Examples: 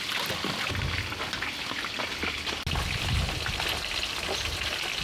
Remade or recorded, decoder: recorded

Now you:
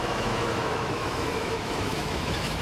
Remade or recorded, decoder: remade, autoencoder, DAC-VAE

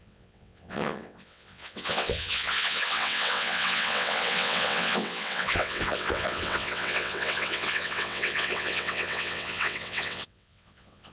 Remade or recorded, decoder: remade, vocoder, WaveNeXt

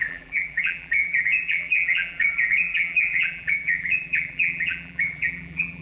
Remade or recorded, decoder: remade, vocoder, BigVGAN v2